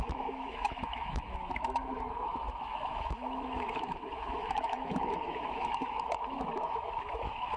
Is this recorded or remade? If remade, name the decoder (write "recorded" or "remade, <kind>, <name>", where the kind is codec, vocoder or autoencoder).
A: remade, autoencoder, DAC-VAE